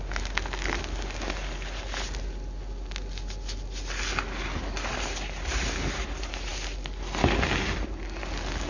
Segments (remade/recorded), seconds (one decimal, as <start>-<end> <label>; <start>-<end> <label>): 0.0-8.7 recorded